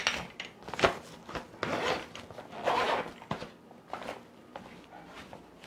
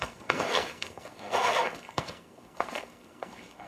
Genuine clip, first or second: first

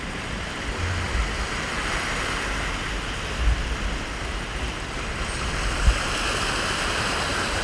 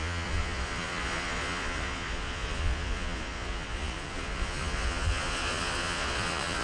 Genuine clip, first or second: first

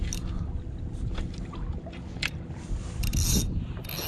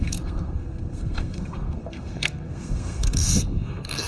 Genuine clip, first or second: first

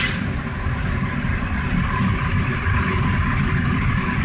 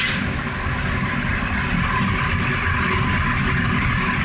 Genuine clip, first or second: second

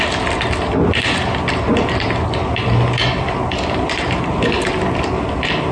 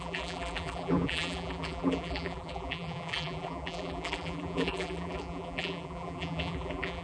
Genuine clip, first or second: first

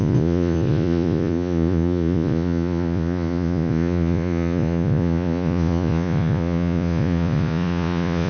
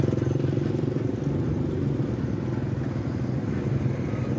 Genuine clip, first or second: second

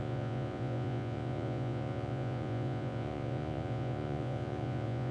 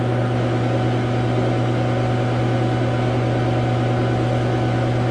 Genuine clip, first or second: second